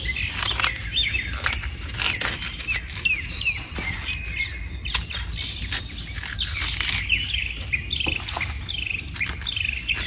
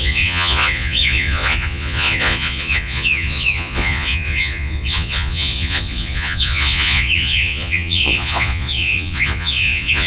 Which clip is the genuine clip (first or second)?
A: first